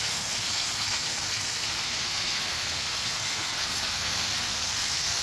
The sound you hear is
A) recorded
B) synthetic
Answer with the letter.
B